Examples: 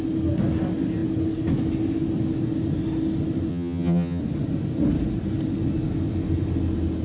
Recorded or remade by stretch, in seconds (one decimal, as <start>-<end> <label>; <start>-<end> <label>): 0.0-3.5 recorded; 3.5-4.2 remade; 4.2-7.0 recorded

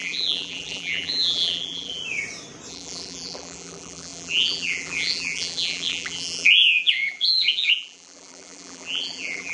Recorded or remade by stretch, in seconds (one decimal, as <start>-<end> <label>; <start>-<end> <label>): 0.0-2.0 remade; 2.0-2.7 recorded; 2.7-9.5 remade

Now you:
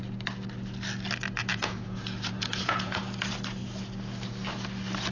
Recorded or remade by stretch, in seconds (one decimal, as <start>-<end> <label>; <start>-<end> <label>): 0.0-1.5 recorded; 1.5-3.0 remade; 3.0-5.1 recorded